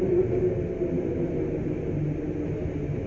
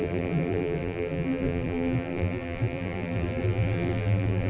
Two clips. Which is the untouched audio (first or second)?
first